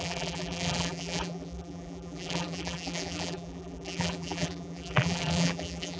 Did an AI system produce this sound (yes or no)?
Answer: yes